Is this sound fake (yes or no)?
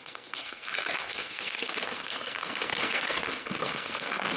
yes